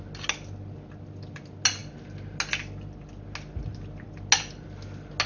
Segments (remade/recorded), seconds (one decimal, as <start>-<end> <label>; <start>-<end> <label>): 0.0-5.3 recorded